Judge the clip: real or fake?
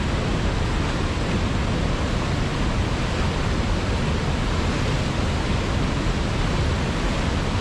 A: real